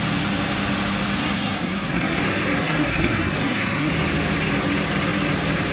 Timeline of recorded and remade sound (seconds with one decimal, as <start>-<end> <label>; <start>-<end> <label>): 0.0-1.2 recorded; 1.2-2.2 remade; 2.2-2.6 recorded; 2.6-3.9 remade; 3.9-5.7 recorded